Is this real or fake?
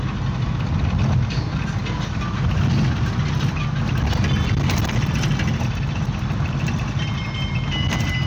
real